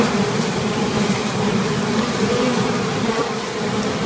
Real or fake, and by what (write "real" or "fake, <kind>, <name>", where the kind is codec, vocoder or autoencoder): fake, vocoder, BigVGAN v2